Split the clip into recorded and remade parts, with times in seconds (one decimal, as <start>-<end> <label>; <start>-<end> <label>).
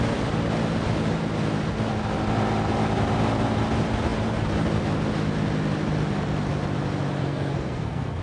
0.0-7.2 recorded; 7.2-8.2 remade